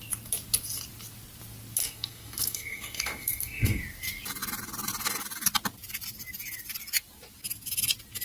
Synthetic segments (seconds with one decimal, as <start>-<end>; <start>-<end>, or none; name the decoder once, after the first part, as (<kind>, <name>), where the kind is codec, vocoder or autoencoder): 1.8-3.8 (codec, SNAC)